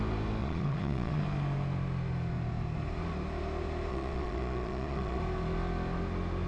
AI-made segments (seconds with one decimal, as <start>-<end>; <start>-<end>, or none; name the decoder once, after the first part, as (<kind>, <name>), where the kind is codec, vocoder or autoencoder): 0.4-1.2 (vocoder, Vocos); 3.9-5.2